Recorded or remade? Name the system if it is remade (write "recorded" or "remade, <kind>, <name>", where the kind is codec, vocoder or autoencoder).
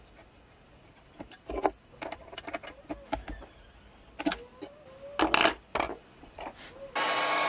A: recorded